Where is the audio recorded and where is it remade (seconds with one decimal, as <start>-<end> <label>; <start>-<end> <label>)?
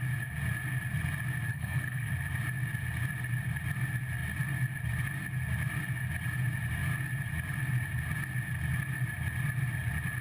0.0-1.5 recorded; 1.5-2.1 remade; 2.1-10.2 recorded